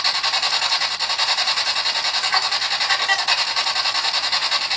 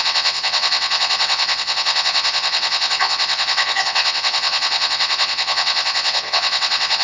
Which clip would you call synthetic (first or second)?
second